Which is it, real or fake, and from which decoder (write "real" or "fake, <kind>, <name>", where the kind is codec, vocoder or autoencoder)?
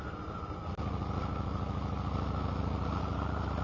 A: real